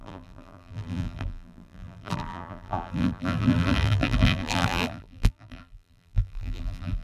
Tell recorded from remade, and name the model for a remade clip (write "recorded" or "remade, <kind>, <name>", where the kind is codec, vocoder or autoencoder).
remade, vocoder, BigVGAN v2